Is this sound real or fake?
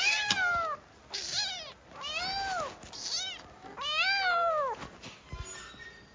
real